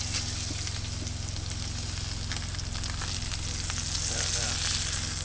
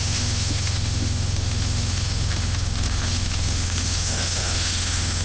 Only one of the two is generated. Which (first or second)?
second